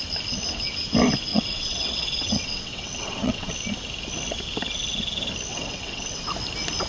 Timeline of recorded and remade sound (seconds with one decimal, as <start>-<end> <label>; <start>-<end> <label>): 0.0-1.3 recorded; 1.3-3.5 remade; 3.5-5.5 recorded; 5.5-6.2 remade; 6.2-6.9 recorded